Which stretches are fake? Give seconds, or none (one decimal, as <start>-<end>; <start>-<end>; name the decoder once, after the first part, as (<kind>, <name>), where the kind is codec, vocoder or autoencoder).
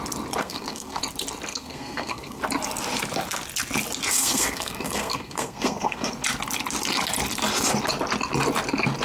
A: 0.4-1.0 (codec, SNAC); 1.5-2.4; 4.1-6.1